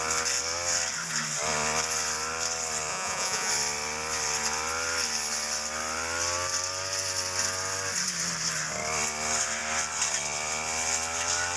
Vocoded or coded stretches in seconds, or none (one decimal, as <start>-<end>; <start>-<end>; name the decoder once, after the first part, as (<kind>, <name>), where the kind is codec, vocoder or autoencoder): 2.9-3.5 (vocoder, Vocos)